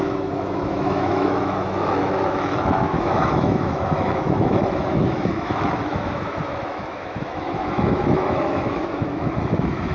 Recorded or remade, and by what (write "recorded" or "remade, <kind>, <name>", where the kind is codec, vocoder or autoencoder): remade, autoencoder, DAC-VAE